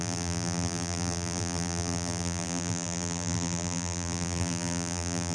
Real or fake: fake